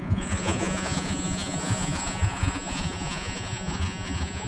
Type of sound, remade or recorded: remade